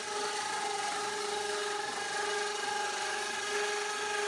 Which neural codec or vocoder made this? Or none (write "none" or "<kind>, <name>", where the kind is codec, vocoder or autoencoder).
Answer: none